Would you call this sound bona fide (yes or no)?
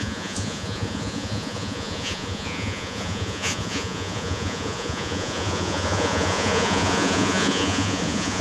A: no